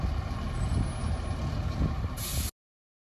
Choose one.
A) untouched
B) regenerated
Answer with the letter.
A